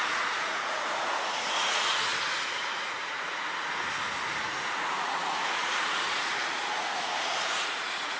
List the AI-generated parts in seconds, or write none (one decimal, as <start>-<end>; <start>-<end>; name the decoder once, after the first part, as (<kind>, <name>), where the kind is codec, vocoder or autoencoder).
0.0-3.8 (vocoder, Vocos); 4.4-8.2